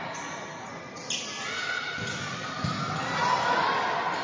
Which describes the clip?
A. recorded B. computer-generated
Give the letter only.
A